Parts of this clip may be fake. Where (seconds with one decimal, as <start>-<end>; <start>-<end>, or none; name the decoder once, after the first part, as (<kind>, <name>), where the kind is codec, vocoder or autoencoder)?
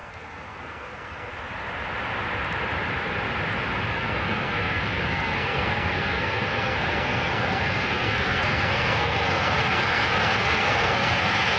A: 0.0-1.3 (codec, SNAC); 3.9-11.6